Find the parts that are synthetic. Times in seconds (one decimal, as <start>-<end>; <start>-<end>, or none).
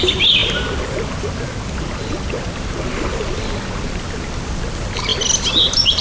none